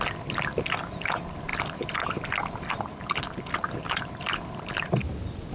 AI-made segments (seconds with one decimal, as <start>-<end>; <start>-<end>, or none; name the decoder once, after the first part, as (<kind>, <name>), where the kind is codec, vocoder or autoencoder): none